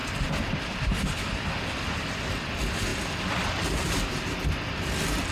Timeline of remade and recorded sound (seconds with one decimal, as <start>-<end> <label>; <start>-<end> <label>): 0.0-1.5 remade; 1.5-5.3 recorded